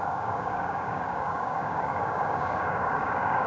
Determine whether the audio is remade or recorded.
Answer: remade